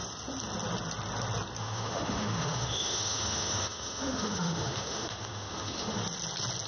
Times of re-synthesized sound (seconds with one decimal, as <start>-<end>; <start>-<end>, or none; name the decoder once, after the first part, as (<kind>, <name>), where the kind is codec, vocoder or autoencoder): 1.6-6.0 (autoencoder, DAC-VAE)